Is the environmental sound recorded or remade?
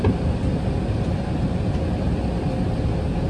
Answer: recorded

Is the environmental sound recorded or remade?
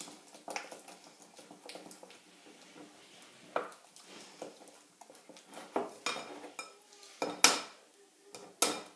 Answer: recorded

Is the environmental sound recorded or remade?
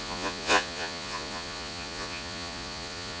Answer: remade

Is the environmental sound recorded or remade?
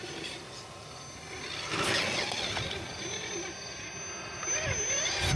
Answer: recorded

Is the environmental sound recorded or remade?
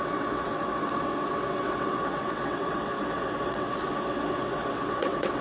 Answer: remade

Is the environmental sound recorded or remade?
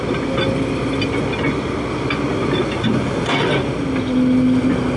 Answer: recorded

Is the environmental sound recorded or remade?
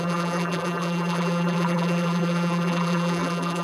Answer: remade